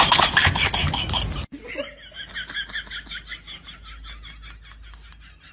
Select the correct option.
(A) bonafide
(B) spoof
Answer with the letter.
A